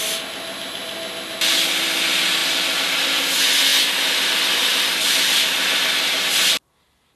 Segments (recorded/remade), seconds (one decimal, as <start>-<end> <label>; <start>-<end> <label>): 0.0-2.4 recorded; 2.4-3.0 remade; 3.0-3.7 recorded; 3.7-6.3 remade; 6.3-7.2 recorded